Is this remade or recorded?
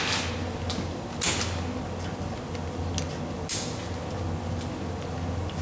recorded